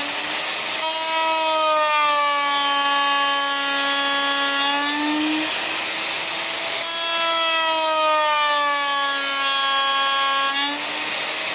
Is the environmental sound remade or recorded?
recorded